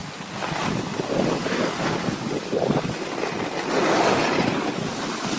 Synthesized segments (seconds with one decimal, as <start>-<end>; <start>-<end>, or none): none